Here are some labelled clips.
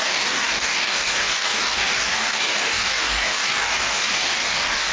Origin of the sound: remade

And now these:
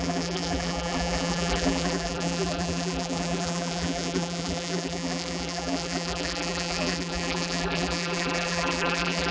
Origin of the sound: remade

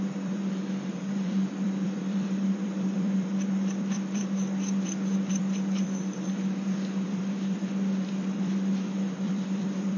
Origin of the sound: remade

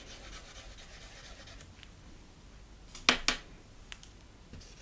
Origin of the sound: recorded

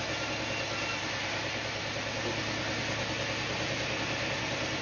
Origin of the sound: recorded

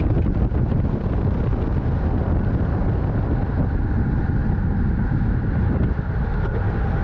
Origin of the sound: recorded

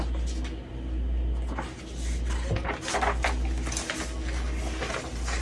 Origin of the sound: recorded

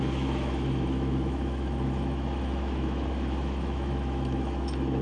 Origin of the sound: remade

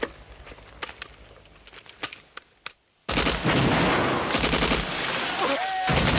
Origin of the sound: recorded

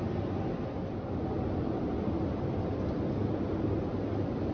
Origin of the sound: recorded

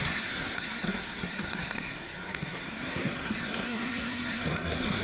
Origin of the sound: remade